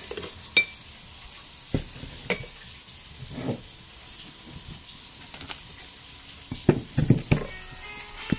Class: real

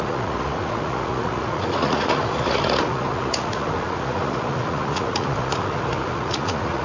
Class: fake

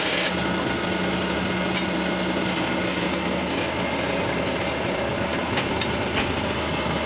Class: real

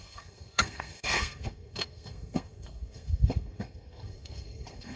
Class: fake